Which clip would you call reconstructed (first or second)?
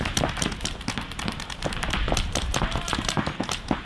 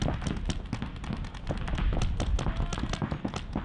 first